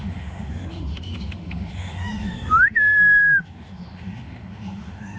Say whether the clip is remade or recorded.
remade